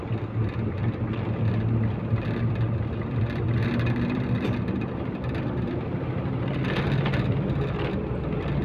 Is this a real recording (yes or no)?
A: no